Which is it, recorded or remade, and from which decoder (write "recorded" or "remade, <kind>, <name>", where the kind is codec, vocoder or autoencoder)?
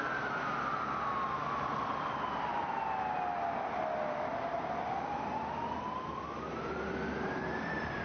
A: recorded